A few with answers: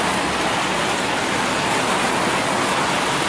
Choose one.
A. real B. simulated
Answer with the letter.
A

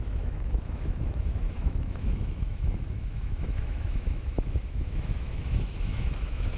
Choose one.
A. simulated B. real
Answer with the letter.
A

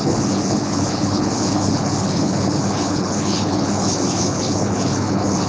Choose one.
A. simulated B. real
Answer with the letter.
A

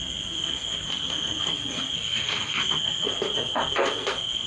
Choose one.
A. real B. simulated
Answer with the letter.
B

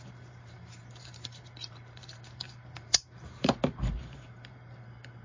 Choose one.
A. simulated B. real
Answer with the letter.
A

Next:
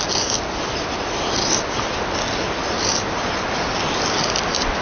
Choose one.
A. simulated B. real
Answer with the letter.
B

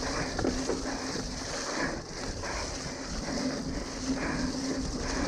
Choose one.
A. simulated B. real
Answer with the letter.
B